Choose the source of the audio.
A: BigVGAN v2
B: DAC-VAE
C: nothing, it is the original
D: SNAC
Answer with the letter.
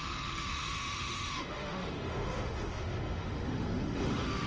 B